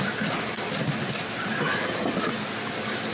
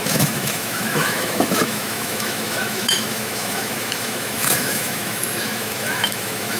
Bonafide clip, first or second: first